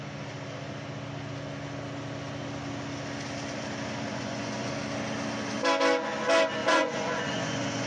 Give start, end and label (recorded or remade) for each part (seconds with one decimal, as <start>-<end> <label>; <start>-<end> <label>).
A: 0.0-4.1 recorded; 4.1-4.7 remade; 4.7-6.6 recorded; 6.6-7.9 remade